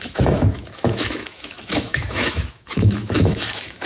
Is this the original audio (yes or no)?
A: no